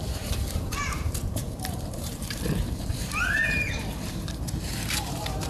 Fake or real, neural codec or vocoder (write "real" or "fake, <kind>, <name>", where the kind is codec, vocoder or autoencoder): fake, vocoder, BigVGAN v2